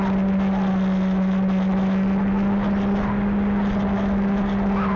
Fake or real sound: real